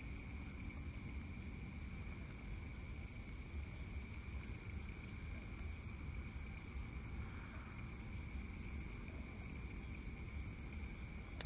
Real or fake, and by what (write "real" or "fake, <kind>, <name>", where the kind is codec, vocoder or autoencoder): real